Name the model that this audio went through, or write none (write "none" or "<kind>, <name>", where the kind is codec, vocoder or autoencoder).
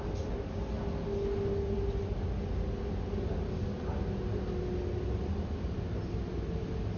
none